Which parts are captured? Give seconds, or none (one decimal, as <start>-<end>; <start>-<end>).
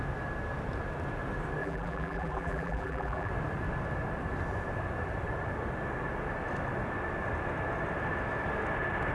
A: 0.0-1.6; 3.3-9.1